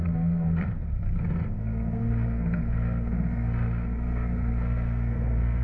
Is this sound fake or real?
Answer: fake